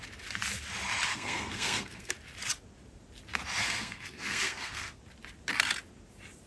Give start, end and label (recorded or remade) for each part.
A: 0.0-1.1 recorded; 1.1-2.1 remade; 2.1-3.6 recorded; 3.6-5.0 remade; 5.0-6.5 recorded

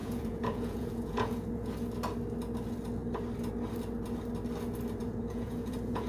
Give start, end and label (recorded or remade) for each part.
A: 0.0-1.7 remade; 1.7-5.0 recorded; 5.0-6.1 remade

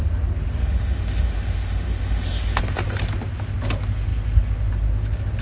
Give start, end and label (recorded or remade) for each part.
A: 0.0-0.6 recorded; 0.6-2.6 remade; 2.6-5.4 recorded

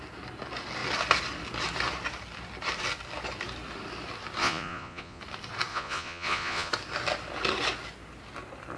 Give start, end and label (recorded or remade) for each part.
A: 0.0-4.4 recorded; 4.4-5.2 remade; 5.2-5.7 recorded; 5.7-6.7 remade; 6.7-8.8 recorded

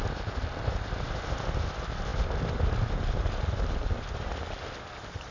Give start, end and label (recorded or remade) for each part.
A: 0.0-5.3 recorded

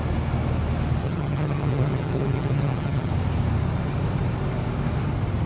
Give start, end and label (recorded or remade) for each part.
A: 0.0-1.0 recorded; 1.0-3.1 remade; 3.1-5.5 recorded

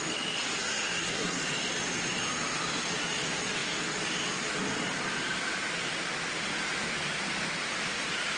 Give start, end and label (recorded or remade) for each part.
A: 0.0-0.6 recorded; 0.6-1.4 remade; 1.4-8.4 recorded

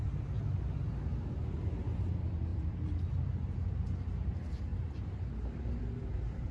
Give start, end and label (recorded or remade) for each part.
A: 0.0-2.5 recorded; 2.5-3.8 remade; 3.8-4.7 recorded; 4.7-5.8 remade; 5.8-6.5 recorded